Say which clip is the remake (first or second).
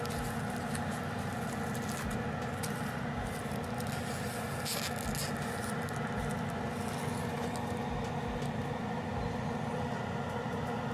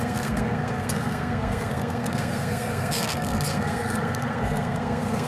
second